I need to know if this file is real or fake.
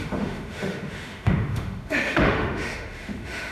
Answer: fake